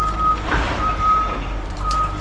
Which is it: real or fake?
fake